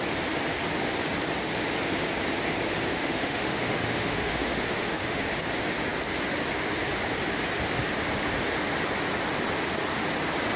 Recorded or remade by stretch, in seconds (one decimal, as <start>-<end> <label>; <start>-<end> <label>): 0.0-2.9 recorded; 2.9-5.3 remade; 5.3-10.6 recorded